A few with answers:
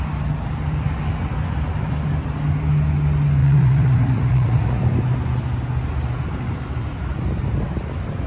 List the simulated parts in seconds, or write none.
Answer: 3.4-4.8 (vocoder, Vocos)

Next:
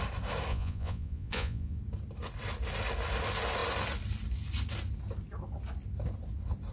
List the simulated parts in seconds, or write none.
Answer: 0.5-1.8 (vocoder, Vocos)

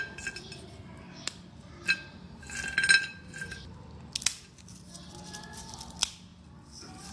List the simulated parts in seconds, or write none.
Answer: none

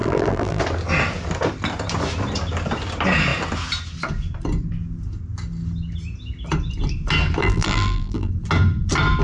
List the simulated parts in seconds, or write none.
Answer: 0.0-0.6 (vocoder, BigVGAN v2); 7.4-8.3